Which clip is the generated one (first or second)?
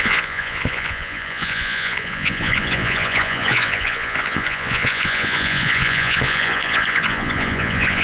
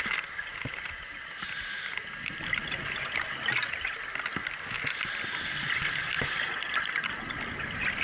first